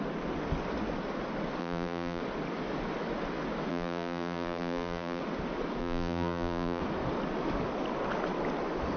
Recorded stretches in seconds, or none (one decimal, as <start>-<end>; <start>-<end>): 0.0-1.6; 2.2-3.7; 5.2-5.8; 6.8-9.0